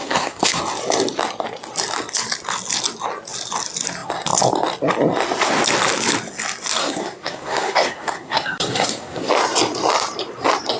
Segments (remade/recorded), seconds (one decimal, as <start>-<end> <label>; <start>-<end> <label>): 0.0-0.6 remade; 0.6-6.8 recorded; 6.8-9.3 remade; 9.3-10.8 recorded